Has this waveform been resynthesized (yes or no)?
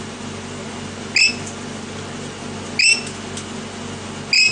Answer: no